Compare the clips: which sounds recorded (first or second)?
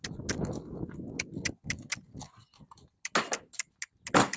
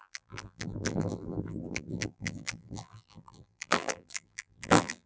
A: first